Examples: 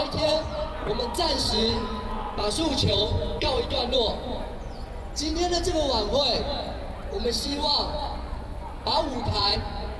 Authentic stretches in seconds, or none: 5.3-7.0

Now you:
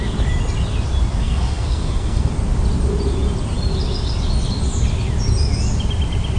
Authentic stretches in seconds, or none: 0.0-1.2; 2.3-6.4

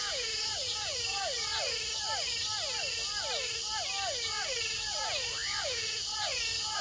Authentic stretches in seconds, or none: 1.5-5.6

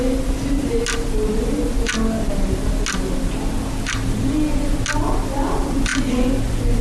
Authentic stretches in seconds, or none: 0.0-6.8

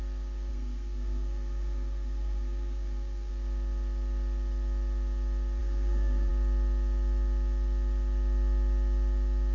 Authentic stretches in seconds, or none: 0.0-0.5; 3.3-5.6; 6.3-9.5

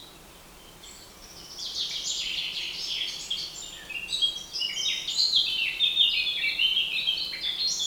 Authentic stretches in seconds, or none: 0.0-7.9

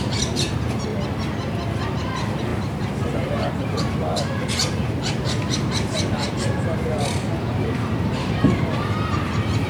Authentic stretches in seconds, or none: 0.9-1.9

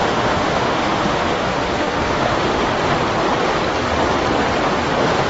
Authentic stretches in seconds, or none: 2.6-5.3